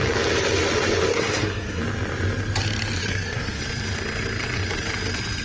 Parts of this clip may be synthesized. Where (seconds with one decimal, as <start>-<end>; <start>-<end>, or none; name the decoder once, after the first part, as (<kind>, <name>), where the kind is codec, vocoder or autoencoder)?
1.1-1.8 (codec, SNAC); 3.0-3.6